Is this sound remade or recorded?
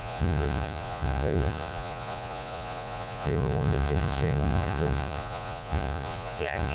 remade